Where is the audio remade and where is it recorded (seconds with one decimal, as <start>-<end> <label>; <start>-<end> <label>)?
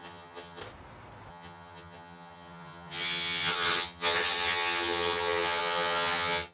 0.0-0.6 remade; 0.6-1.3 recorded; 1.3-6.5 remade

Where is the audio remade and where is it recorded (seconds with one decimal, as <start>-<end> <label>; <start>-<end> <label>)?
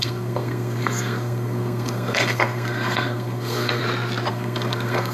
0.0-3.8 remade; 3.8-4.3 recorded; 4.3-5.1 remade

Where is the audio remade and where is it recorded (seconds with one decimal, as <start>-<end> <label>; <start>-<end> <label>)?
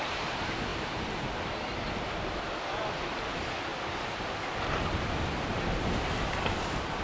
0.0-7.0 recorded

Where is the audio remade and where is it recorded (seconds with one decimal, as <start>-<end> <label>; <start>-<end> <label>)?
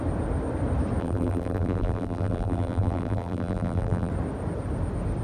0.0-1.0 recorded; 1.0-4.1 remade; 4.1-5.2 recorded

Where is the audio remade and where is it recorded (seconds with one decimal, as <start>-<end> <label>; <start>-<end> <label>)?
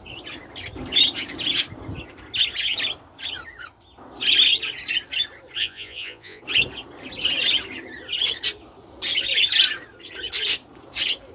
0.0-5.6 recorded; 5.6-6.4 remade; 6.4-11.3 recorded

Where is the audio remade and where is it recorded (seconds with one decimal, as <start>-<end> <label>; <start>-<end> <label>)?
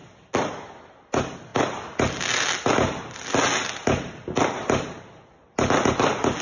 0.0-6.4 recorded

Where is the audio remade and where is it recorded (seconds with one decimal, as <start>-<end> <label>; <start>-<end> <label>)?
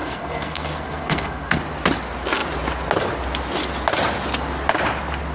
0.0-1.6 remade; 1.6-5.3 recorded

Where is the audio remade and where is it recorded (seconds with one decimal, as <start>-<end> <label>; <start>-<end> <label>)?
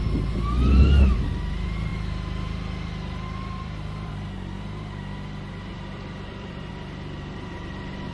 0.0-1.9 recorded; 1.9-4.1 remade; 4.1-5.7 recorded; 5.7-6.7 remade; 6.7-8.1 recorded